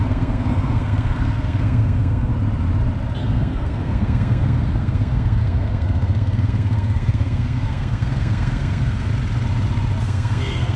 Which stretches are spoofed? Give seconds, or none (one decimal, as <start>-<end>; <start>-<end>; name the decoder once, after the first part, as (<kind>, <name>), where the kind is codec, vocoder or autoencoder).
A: 0.0-2.3 (codec, SNAC); 3.2-9.1; 10.0-10.8